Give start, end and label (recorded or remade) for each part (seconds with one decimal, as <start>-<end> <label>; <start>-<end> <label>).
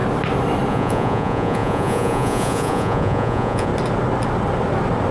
0.0-0.7 recorded; 0.7-3.7 remade; 3.7-5.1 recorded